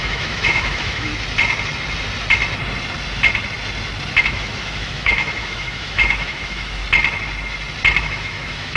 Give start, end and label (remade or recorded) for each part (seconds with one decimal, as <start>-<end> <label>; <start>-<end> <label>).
0.0-1.1 remade; 1.1-4.2 recorded; 4.2-6.8 remade; 6.8-8.0 recorded; 8.0-8.8 remade